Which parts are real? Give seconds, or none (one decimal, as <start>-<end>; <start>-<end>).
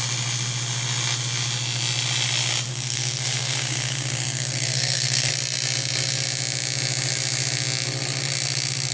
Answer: 0.0-2.7; 5.3-8.9